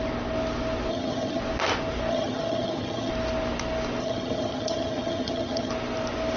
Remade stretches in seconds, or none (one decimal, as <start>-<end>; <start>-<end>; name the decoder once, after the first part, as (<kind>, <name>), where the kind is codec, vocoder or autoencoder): 0.9-1.4 (vocoder, HiFi-GAN); 2.1-3.1; 4.0-5.7